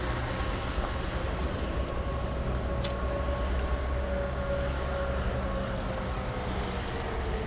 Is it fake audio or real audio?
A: real